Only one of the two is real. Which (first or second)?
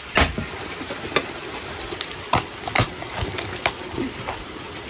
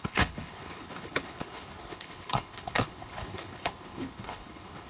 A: first